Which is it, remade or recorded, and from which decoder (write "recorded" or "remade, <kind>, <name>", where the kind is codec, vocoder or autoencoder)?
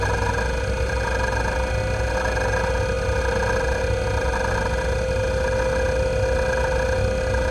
recorded